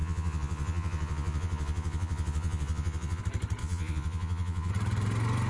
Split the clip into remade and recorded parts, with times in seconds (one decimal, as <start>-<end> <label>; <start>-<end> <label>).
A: 0.0-3.2 remade; 3.2-3.6 recorded; 3.6-4.7 remade; 4.7-5.5 recorded